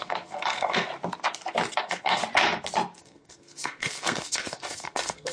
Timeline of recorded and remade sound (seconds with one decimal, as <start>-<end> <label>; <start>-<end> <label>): 0.0-0.9 remade; 0.9-1.8 recorded; 1.8-2.2 remade; 2.2-3.0 recorded; 3.0-5.3 remade